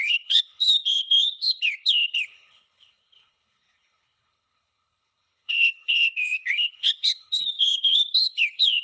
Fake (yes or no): yes